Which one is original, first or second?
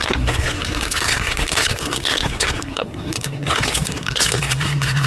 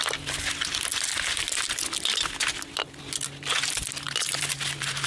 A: second